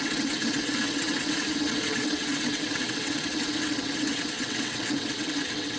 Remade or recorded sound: remade